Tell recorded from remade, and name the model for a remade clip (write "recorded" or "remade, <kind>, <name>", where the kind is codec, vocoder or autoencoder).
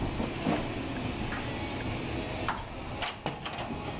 recorded